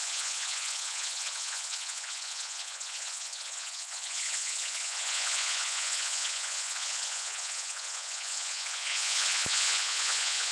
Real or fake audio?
fake